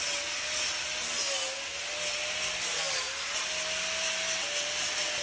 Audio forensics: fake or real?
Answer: real